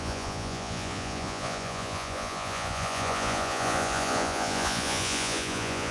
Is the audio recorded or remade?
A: remade